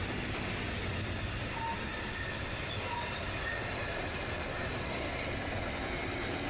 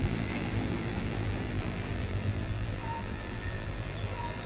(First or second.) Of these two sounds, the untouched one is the first